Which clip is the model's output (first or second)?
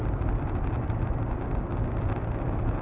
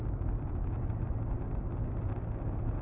first